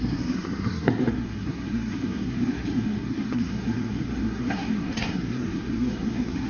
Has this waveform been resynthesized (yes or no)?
yes